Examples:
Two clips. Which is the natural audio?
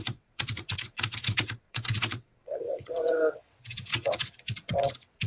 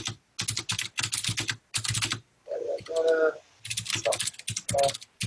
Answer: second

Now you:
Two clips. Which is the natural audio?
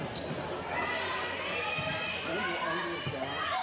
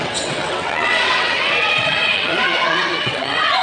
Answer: first